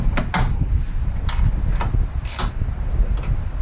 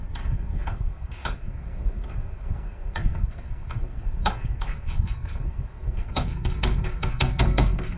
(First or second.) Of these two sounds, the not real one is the second